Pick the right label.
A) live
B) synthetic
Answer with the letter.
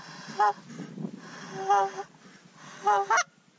A